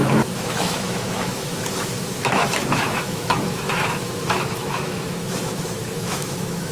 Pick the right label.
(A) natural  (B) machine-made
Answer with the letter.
B